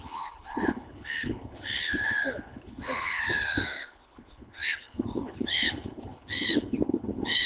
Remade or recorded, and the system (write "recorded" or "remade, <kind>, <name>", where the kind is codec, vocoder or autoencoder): remade, codec, HILCodec